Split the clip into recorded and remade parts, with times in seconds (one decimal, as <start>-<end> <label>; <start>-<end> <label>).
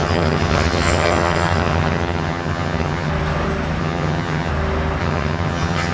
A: 0.0-3.1 remade; 3.1-3.8 recorded; 3.8-4.5 remade; 4.5-5.0 recorded; 5.0-5.9 remade